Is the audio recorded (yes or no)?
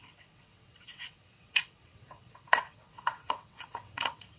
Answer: no